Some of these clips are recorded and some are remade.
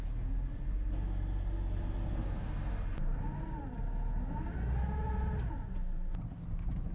recorded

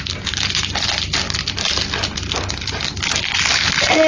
recorded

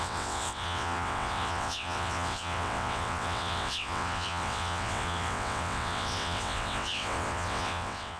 remade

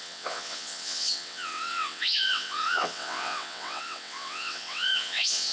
remade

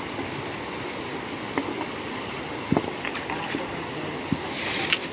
recorded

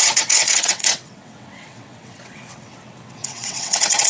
remade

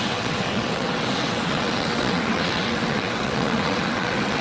remade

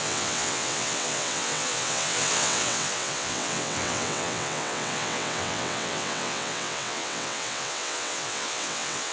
remade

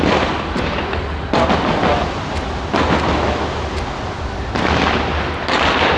recorded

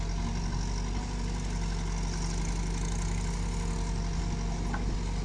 recorded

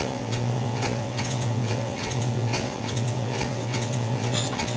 remade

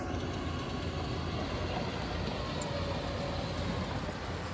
recorded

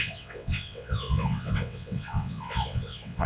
remade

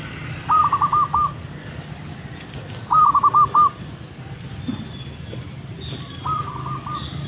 recorded